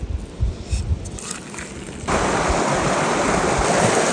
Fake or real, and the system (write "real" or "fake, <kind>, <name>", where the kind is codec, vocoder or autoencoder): real